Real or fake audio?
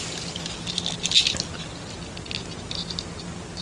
real